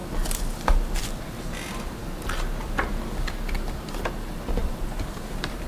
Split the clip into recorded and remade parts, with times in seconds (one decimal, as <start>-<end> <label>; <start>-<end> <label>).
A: 0.0-4.6 recorded; 4.6-5.7 remade